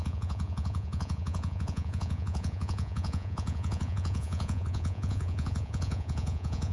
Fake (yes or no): yes